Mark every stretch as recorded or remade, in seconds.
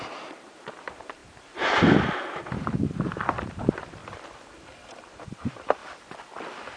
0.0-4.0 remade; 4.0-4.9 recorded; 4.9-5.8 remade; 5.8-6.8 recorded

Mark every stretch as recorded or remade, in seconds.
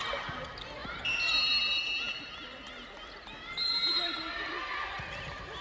0.0-0.8 recorded; 0.8-1.4 remade; 1.4-3.3 recorded; 3.3-5.6 remade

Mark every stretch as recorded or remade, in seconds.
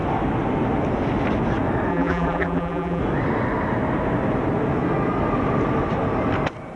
0.0-1.9 recorded; 1.9-3.0 remade; 3.0-6.8 recorded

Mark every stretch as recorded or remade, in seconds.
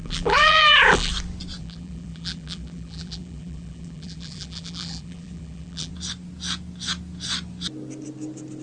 0.0-1.1 remade; 1.1-1.6 recorded; 1.6-5.9 remade; 5.9-8.6 recorded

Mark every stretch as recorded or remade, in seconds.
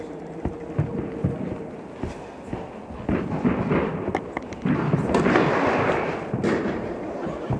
0.0-7.6 recorded